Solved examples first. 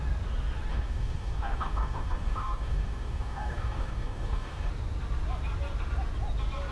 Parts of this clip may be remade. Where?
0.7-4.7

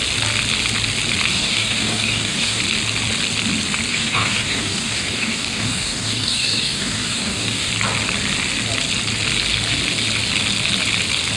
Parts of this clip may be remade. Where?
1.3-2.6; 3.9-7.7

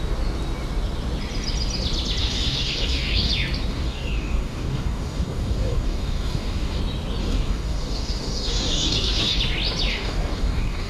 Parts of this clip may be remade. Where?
2.2-3.3; 3.7-6.8; 7.2-9.4; 9.9-10.9

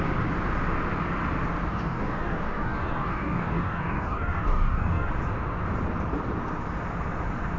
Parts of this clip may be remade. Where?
1.7-5.1

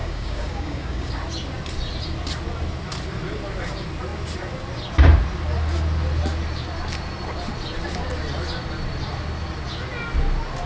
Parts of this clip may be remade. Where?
0.0-1.1

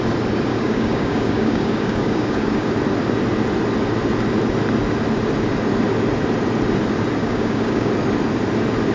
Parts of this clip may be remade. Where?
0.5-2.7; 7.2-7.9

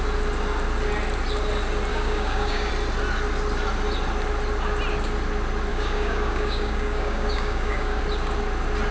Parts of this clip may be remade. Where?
1.9-2.7; 5.7-8.0